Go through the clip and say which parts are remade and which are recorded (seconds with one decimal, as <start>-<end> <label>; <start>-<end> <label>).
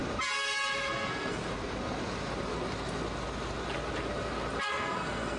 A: 0.0-0.9 recorded; 0.9-1.4 remade; 1.4-4.6 recorded; 4.6-5.4 remade